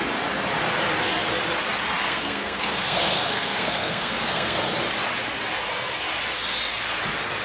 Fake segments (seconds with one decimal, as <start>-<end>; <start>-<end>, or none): 2.0-4.6